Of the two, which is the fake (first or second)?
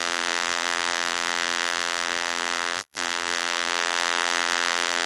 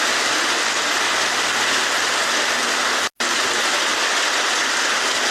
first